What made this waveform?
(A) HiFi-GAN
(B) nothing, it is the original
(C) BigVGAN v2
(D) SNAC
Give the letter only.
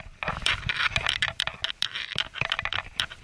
B